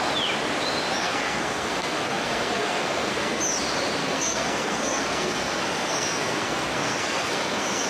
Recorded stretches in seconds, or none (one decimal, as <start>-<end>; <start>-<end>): 0.0-1.0; 3.4-4.0